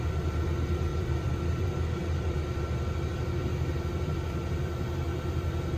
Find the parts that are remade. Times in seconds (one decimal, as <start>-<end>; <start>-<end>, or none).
0.9-2.6